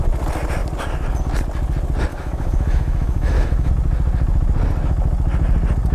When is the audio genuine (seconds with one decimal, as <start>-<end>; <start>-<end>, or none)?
0.0-2.1; 3.7-5.9